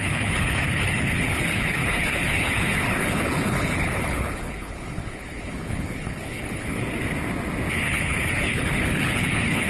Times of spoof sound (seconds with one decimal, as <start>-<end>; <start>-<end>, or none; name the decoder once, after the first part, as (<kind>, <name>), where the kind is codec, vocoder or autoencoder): 0.0-6.8 (codec, HILCodec); 7.7-9.7